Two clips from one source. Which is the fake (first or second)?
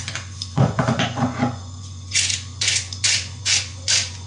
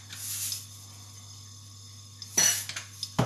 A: first